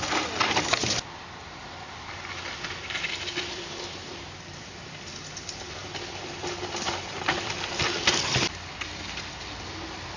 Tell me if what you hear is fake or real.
real